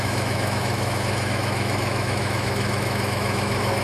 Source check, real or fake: fake